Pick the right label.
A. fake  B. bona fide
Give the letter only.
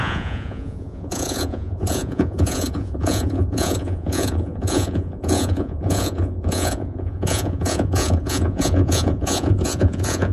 A